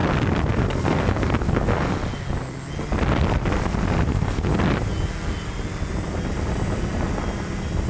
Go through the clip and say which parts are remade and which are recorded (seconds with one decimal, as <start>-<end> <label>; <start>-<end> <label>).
0.0-0.5 recorded; 0.5-1.9 remade; 1.9-4.1 recorded; 4.1-4.5 remade; 4.5-7.9 recorded